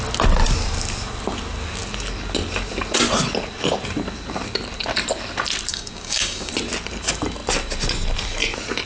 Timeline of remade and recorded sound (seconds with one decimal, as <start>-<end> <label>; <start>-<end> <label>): 0.0-5.7 recorded; 5.7-6.5 remade; 6.5-8.9 recorded